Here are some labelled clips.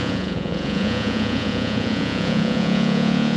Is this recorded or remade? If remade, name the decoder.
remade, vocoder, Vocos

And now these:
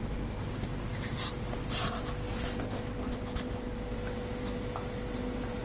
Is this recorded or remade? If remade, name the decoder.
recorded